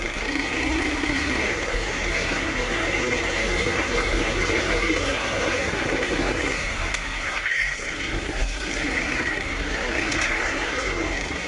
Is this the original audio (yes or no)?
no